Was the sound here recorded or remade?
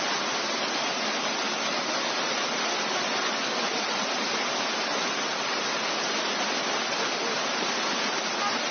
recorded